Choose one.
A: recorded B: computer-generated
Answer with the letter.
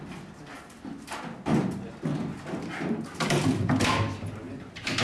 A